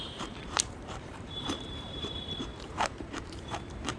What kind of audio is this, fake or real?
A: fake